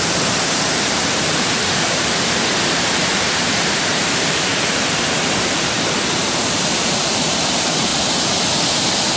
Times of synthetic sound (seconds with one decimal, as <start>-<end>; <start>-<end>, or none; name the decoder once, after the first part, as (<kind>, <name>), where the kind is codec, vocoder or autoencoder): 0.0-4.5 (vocoder, BigVGAN v2); 5.2-7.9